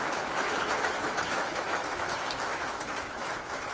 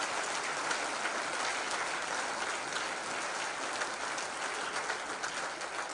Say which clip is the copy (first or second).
first